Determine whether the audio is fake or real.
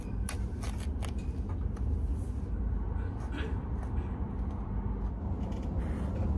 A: real